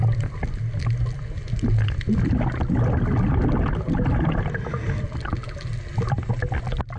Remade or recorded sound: recorded